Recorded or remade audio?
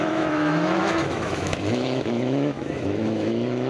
remade